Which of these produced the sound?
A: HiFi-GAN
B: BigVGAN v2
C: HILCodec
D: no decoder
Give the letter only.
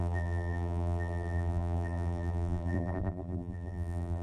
B